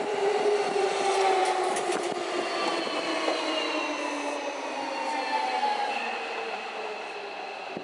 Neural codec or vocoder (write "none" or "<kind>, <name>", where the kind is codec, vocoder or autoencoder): none